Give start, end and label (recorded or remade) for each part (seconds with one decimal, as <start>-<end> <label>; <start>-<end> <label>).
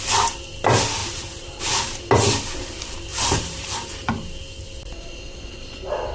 0.0-1.0 recorded; 1.0-1.6 remade; 1.6-3.1 recorded; 3.1-4.1 remade; 4.1-6.1 recorded